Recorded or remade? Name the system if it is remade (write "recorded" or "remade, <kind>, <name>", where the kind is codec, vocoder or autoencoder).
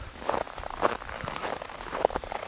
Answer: recorded